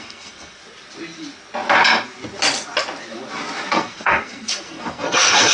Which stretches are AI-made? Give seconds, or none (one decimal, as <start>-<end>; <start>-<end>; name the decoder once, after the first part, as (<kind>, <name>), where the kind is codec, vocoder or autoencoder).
0.0-0.6 (codec, SNAC); 3.7-5.5